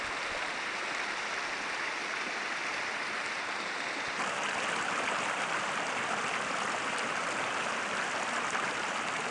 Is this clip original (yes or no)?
yes